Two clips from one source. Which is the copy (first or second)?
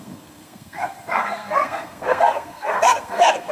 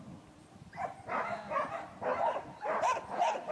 first